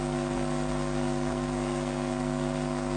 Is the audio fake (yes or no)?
yes